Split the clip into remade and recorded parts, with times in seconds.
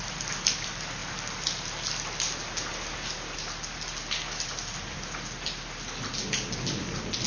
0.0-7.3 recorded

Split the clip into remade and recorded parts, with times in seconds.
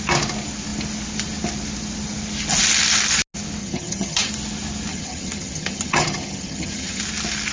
0.0-3.6 recorded; 3.6-4.3 remade; 4.3-4.9 recorded; 4.9-7.0 remade; 7.0-7.5 recorded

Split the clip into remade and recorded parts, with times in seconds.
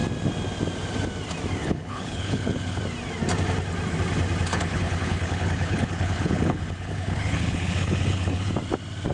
0.0-1.6 recorded; 1.6-2.8 remade; 2.8-4.5 recorded; 4.5-8.5 remade; 8.5-9.1 recorded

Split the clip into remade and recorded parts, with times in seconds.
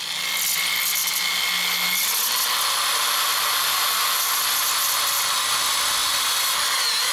0.0-7.1 recorded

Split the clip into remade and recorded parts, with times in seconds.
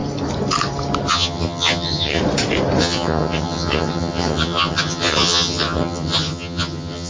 0.0-1.1 recorded; 1.1-2.2 remade; 2.2-2.8 recorded; 2.8-7.1 remade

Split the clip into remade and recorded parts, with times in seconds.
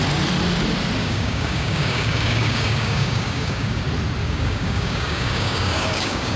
0.0-1.0 recorded; 1.0-3.8 remade; 3.8-4.2 recorded; 4.2-6.4 remade